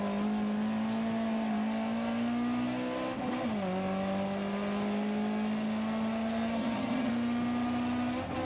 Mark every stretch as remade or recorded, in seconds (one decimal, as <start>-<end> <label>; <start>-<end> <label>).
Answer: 0.0-6.6 recorded; 6.6-7.1 remade; 7.1-8.4 recorded